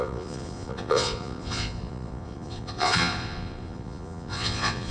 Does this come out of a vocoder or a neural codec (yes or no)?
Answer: yes